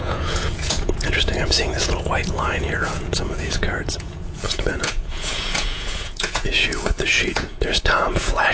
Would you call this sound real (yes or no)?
no